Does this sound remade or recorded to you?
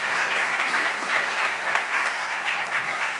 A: remade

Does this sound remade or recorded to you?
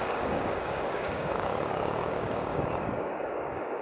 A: remade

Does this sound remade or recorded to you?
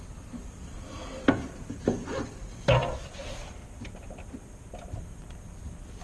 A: recorded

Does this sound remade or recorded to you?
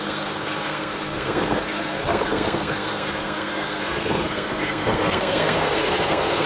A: remade